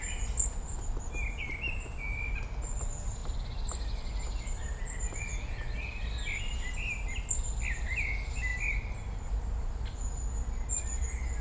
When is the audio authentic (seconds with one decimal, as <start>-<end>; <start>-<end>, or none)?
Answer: 0.0-3.2; 5.8-11.4